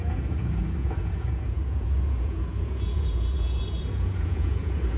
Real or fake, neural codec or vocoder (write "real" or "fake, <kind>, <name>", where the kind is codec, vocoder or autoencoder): fake, vocoder, Vocos